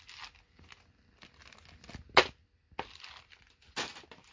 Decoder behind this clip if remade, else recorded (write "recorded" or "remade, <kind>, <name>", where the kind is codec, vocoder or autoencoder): recorded